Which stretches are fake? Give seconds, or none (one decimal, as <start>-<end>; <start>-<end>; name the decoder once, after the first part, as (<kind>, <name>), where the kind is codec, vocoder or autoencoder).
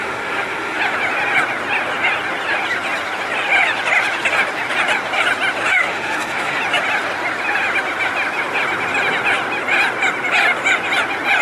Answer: 0.0-0.8 (autoencoder, DAC-VAE); 5.7-6.6